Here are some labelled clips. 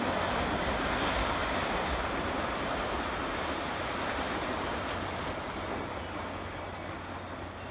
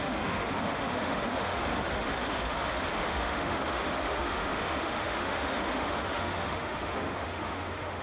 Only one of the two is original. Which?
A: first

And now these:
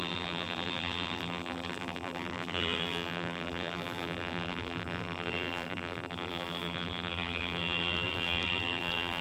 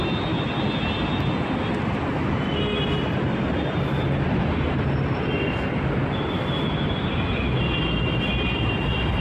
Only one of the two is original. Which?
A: second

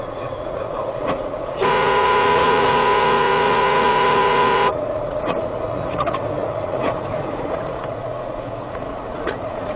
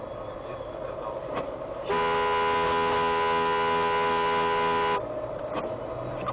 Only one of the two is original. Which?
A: second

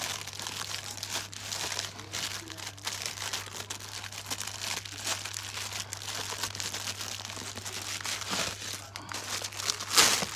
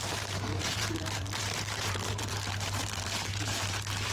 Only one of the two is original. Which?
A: first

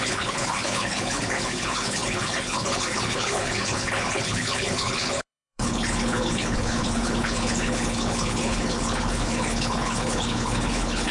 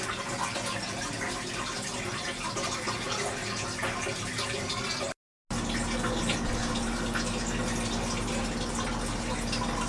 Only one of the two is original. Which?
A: second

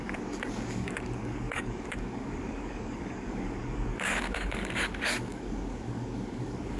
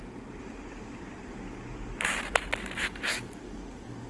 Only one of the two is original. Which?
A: second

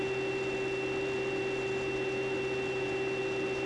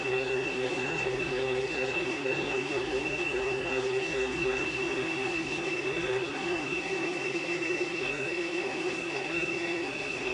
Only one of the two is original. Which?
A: first